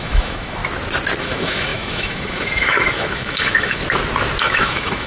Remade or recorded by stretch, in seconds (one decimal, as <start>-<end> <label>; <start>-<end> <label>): 0.0-0.6 remade; 0.6-1.2 recorded; 1.2-3.8 remade; 3.8-4.4 recorded; 4.4-5.1 remade